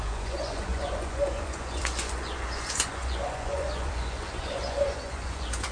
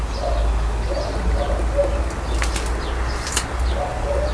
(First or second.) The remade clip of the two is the first